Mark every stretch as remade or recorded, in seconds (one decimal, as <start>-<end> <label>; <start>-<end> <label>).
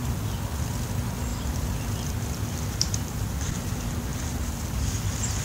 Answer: 0.0-0.7 remade; 0.7-1.3 recorded; 1.3-3.5 remade; 3.5-5.4 recorded